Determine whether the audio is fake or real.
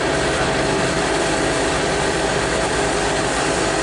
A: fake